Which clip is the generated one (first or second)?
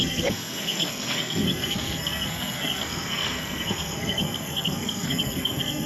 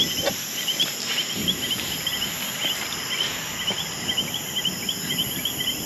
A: first